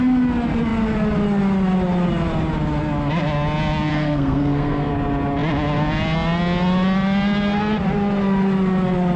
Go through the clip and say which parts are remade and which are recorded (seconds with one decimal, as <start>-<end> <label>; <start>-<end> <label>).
0.0-3.9 recorded; 3.9-4.9 remade; 4.9-9.2 recorded